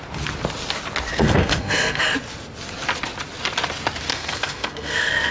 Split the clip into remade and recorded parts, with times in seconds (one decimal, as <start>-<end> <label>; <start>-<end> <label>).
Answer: 0.0-1.1 recorded; 1.1-2.0 remade; 2.0-4.1 recorded; 4.1-5.3 remade